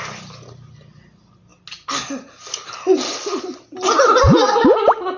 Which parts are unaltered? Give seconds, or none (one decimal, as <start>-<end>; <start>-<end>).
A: 0.0-5.2